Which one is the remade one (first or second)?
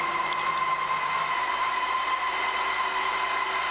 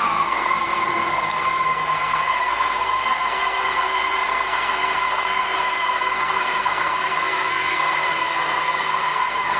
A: second